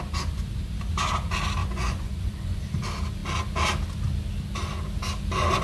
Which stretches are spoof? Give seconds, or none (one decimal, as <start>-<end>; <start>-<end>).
1.6-2.6